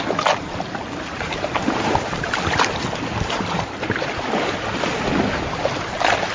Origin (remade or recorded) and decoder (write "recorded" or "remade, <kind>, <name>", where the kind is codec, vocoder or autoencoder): recorded